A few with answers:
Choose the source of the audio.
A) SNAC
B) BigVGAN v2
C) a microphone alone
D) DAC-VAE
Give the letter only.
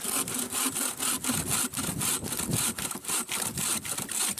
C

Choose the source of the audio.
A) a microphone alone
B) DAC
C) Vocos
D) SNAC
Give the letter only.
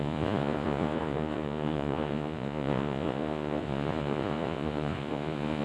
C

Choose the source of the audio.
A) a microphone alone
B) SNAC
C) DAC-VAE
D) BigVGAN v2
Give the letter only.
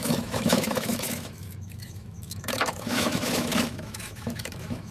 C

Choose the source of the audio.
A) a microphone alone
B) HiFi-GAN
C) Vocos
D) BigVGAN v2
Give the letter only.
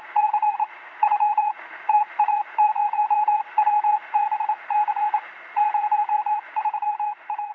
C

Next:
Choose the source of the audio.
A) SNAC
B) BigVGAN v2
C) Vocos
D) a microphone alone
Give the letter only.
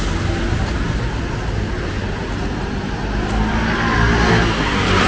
D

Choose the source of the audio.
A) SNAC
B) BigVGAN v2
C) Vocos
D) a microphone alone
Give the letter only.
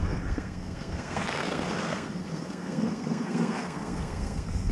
A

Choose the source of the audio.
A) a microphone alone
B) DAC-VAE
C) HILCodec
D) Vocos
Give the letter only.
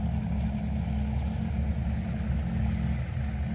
A